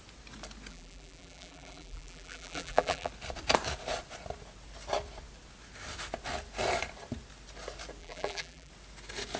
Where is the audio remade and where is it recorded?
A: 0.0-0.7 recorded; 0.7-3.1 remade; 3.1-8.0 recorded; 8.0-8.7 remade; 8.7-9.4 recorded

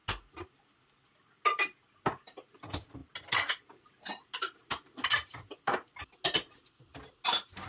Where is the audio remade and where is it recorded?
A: 0.0-7.7 recorded

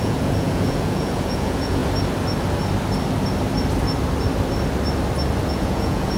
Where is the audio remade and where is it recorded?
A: 0.0-1.8 remade; 1.8-5.5 recorded; 5.5-6.2 remade

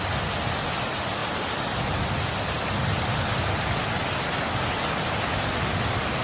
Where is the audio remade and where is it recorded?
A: 0.0-6.2 recorded

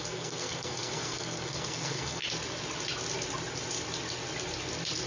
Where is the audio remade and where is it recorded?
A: 0.0-2.2 remade; 2.2-5.1 recorded

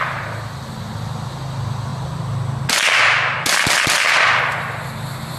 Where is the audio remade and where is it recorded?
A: 0.0-5.4 recorded

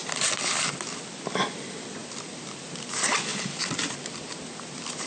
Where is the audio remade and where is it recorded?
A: 0.0-0.7 remade; 0.7-2.0 recorded; 2.0-2.9 remade; 2.9-5.1 recorded